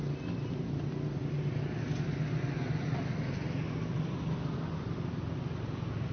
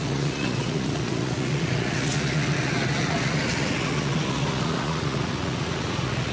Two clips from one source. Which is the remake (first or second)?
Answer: second